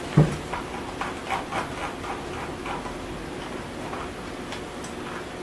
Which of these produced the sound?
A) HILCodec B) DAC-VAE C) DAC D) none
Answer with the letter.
D